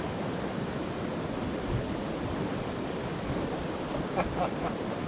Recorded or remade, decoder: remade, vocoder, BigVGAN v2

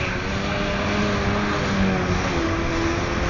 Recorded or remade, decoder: recorded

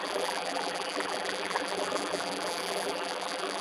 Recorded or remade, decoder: remade, vocoder, BigVGAN v2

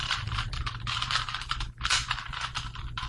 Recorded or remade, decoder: remade, vocoder, BigVGAN v2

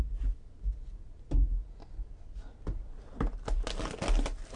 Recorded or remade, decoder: recorded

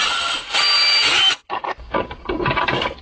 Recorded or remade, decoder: recorded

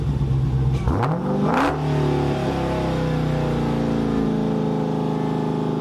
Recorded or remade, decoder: recorded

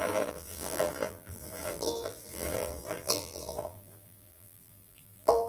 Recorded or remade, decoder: remade, vocoder, BigVGAN v2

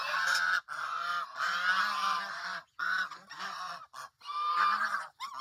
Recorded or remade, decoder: recorded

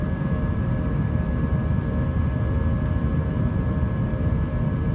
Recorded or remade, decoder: remade, vocoder, BigVGAN v2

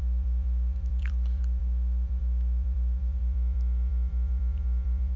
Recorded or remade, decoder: remade, vocoder, BigVGAN v2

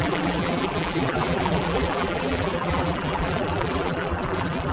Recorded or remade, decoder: remade, vocoder, BigVGAN v2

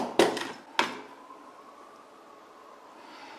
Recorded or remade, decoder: recorded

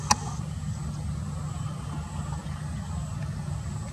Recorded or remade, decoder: recorded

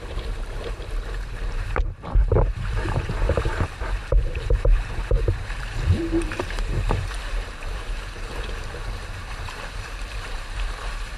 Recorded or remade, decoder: remade, vocoder, BigVGAN v2